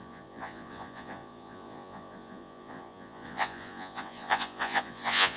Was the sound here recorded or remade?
remade